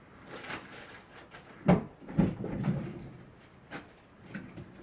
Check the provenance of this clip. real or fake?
real